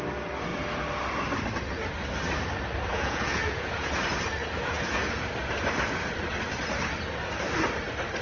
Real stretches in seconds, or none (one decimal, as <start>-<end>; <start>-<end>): 0.0-2.9; 3.9-4.4; 5.0-8.2